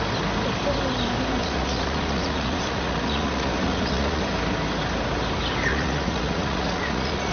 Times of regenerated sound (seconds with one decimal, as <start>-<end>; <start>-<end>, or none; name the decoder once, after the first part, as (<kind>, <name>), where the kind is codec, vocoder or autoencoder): 1.4-4.2 (vocoder, Vocos); 5.7-7.3